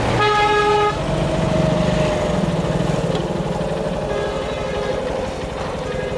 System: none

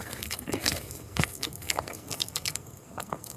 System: codec, SNAC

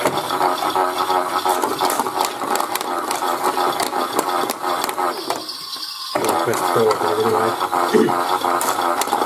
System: none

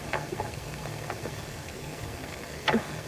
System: codec, SNAC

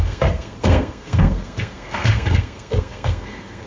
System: codec, SNAC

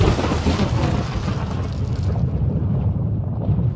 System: none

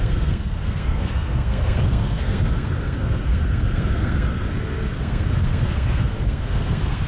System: codec, SNAC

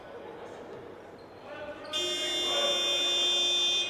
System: none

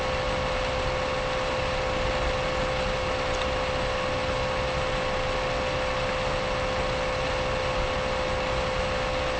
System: none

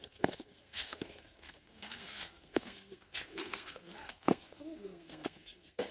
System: codec, SNAC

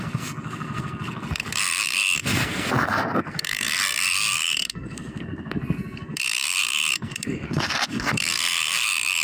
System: codec, SNAC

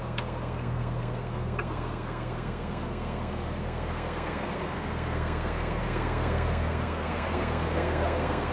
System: codec, SNAC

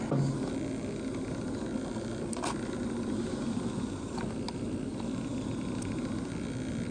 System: none